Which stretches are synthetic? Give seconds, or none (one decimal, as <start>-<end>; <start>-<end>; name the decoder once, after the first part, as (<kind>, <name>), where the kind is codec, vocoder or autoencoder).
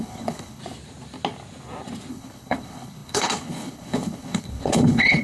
0.0-0.6 (codec, HILCodec); 2.1-5.2